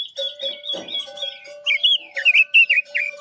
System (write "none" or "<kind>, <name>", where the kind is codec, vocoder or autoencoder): none